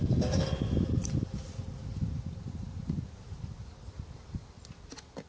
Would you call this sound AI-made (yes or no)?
no